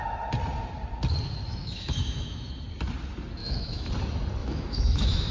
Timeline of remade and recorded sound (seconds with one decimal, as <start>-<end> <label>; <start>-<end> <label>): 0.0-1.5 recorded; 1.5-2.5 remade; 2.5-3.4 recorded; 3.4-3.9 remade; 3.9-4.4 recorded; 4.4-5.3 remade